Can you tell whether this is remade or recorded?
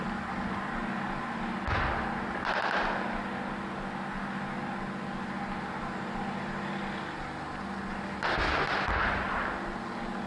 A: recorded